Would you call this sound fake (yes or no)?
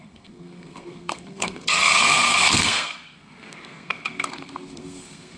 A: yes